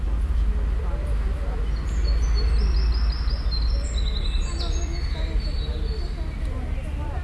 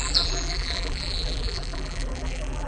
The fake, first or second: second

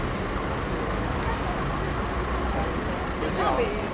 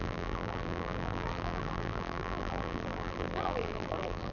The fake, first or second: second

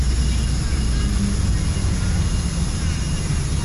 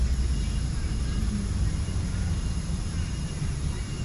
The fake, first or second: second